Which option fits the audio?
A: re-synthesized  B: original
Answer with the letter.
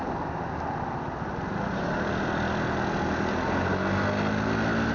B